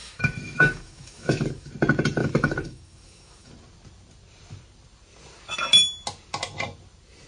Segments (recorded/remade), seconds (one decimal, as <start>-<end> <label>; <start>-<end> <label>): 0.0-1.7 remade; 1.7-2.2 recorded; 2.2-3.5 remade; 3.5-7.3 recorded

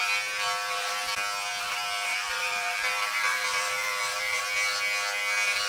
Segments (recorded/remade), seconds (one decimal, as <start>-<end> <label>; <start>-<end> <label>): 0.0-2.1 recorded; 2.1-4.4 remade; 4.4-5.7 recorded

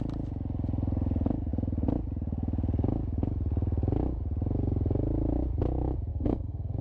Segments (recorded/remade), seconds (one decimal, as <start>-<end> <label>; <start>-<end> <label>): 0.0-6.1 recorded; 6.1-6.8 remade

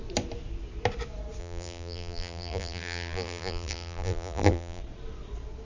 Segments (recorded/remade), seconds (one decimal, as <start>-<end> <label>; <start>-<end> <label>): 0.0-1.4 recorded; 1.4-4.8 remade; 4.8-5.6 recorded

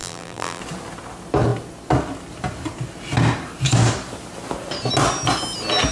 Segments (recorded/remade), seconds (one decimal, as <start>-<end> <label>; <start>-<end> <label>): 0.0-0.6 remade; 0.6-5.9 recorded

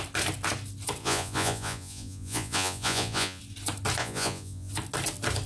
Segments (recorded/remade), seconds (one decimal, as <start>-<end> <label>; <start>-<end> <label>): 0.0-1.0 recorded; 1.0-3.4 remade; 3.4-4.0 recorded; 4.0-4.7 remade; 4.7-5.5 recorded

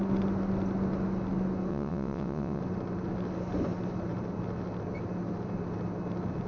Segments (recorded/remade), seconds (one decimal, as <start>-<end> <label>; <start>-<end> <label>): 0.0-1.7 recorded; 1.7-2.6 remade; 2.6-6.5 recorded